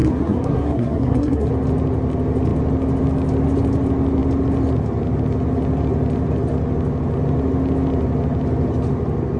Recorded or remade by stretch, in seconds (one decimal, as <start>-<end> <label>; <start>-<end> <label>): 0.0-1.5 remade; 1.5-9.4 recorded